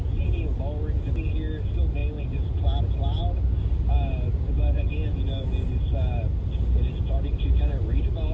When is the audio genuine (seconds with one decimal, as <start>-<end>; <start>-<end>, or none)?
0.0-8.3